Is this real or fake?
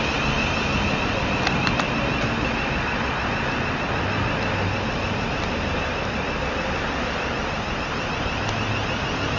real